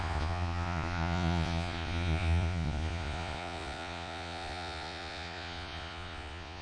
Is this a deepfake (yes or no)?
yes